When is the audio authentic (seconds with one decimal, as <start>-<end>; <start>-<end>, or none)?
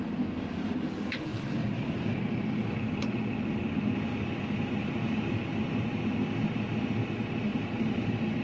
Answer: 0.0-1.3; 2.2-4.8; 5.6-7.5